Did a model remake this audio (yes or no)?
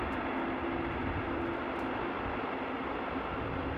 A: no